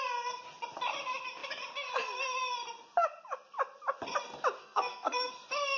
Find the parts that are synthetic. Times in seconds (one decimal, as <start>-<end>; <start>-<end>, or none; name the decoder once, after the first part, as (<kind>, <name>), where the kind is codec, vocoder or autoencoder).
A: 4.6-5.3 (codec, SNAC)